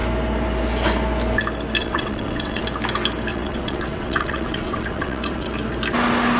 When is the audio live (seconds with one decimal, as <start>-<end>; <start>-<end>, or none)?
0.0-1.8; 2.6-3.3; 5.5-6.4